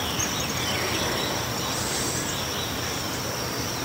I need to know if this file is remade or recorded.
recorded